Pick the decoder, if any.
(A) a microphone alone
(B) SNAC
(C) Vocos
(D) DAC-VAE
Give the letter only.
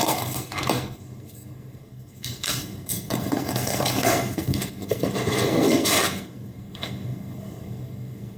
B